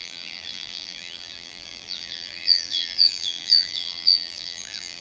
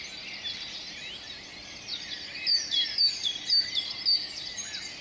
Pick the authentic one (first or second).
second